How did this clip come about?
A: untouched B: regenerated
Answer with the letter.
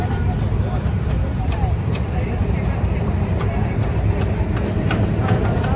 B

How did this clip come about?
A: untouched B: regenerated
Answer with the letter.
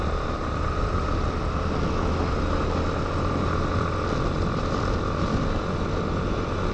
A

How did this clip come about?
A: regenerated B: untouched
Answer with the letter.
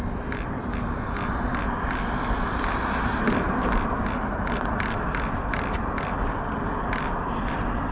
B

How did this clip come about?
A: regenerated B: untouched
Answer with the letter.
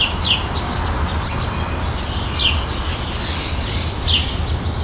B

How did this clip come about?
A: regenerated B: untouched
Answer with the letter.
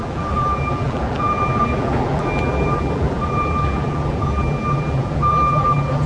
A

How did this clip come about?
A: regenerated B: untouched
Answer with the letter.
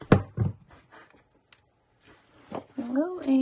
B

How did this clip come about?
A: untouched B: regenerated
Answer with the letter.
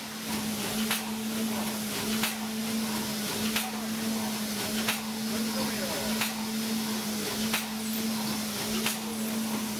A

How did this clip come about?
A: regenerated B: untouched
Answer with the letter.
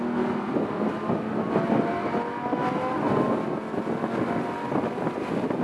B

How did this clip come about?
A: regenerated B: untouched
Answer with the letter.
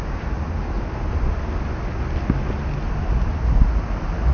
B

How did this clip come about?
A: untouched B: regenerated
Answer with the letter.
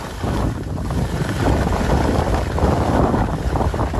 B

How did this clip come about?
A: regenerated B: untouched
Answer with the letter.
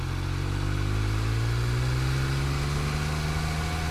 B